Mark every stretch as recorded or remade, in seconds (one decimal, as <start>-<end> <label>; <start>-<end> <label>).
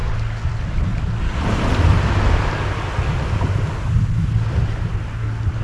0.0-5.6 recorded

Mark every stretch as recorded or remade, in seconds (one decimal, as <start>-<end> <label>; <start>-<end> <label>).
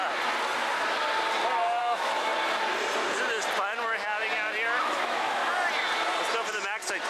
0.0-1.8 recorded; 1.8-2.3 remade; 2.3-4.8 recorded; 4.8-5.4 remade; 5.4-7.1 recorded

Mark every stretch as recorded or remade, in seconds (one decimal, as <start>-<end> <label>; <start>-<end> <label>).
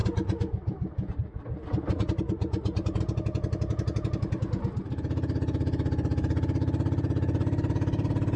0.0-8.4 recorded